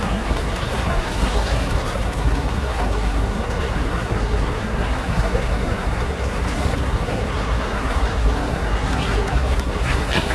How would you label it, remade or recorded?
remade